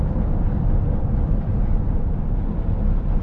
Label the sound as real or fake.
real